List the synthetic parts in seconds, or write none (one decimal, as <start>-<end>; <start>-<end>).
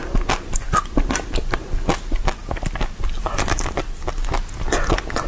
none